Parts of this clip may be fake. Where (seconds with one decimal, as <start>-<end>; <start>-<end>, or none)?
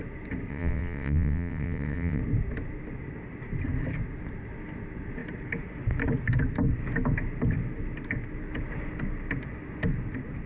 0.5-2.2